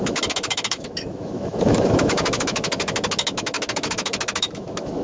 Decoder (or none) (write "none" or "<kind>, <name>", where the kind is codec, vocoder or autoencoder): autoencoder, DAC-VAE